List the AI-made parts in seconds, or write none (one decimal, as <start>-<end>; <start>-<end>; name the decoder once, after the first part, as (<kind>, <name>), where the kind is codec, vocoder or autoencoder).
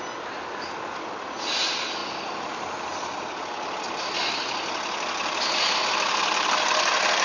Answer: none